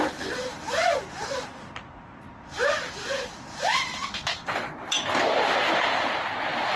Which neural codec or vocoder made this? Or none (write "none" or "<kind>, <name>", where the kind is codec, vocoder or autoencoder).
none